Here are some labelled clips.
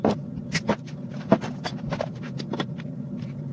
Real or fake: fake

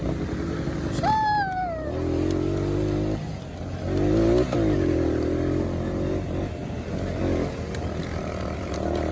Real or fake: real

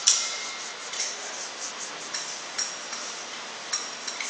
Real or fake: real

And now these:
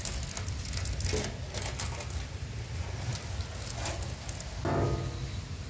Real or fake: real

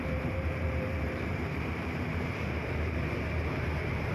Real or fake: fake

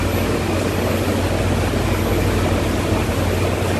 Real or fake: real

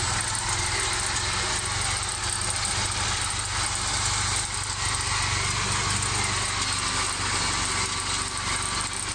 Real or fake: real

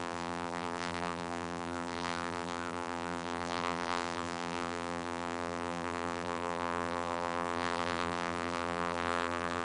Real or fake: fake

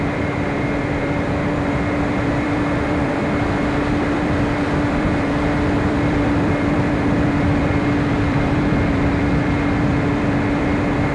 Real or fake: fake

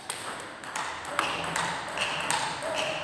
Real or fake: real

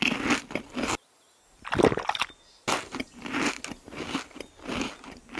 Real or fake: real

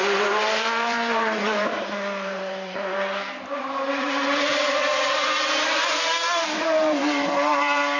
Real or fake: fake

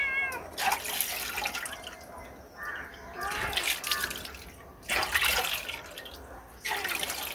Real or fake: real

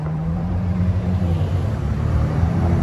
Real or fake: fake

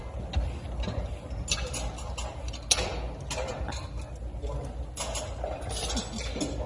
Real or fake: real